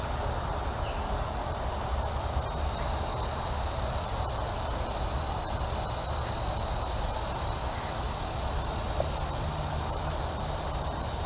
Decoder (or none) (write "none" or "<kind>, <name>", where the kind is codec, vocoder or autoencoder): none